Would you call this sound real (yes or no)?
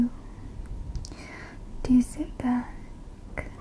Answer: yes